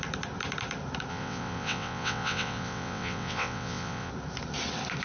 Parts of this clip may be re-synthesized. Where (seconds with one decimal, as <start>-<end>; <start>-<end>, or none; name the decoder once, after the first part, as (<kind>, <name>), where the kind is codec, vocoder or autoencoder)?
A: 1.1-4.1 (vocoder, WaveNeXt)